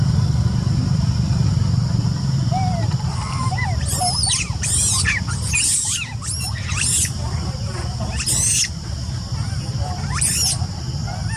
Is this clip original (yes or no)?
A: yes